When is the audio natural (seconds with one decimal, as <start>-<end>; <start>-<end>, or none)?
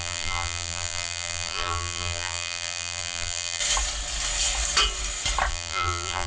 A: 3.6-5.5